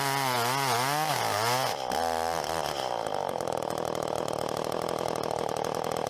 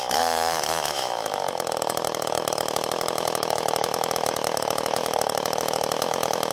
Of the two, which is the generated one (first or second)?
second